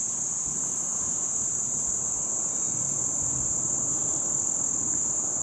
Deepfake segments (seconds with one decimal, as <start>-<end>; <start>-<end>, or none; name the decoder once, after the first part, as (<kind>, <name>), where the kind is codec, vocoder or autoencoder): none